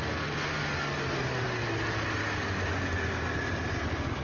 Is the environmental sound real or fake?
real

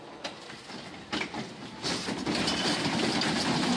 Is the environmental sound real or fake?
real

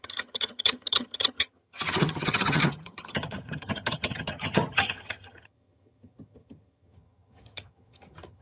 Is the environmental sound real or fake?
fake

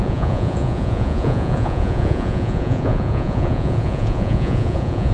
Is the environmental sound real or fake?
fake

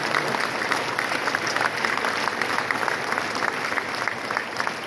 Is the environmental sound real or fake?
real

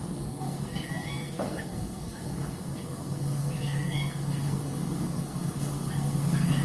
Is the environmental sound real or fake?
fake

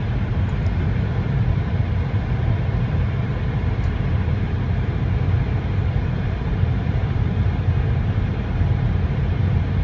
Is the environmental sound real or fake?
fake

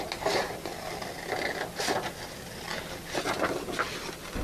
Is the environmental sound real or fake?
real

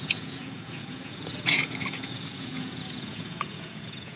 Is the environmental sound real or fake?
fake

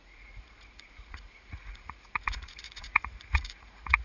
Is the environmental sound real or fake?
fake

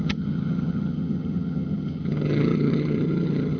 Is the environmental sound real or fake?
fake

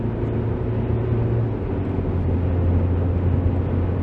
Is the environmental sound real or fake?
real